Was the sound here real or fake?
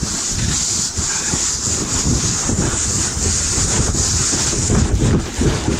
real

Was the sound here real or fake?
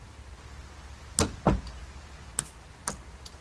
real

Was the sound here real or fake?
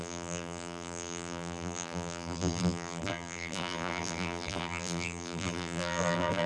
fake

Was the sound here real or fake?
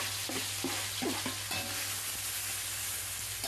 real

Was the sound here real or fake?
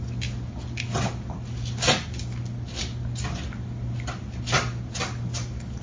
real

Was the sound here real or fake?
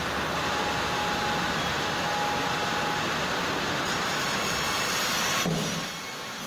real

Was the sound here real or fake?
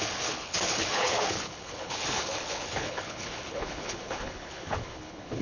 fake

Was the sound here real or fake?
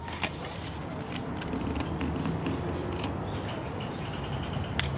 real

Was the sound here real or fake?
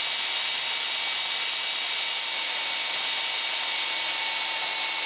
real